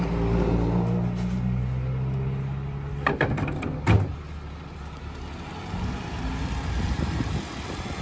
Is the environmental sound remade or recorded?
recorded